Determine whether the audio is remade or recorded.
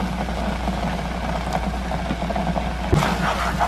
recorded